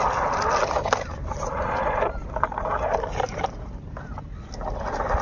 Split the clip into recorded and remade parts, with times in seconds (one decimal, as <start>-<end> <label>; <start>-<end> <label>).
0.0-0.6 recorded; 0.6-3.7 remade; 3.7-5.2 recorded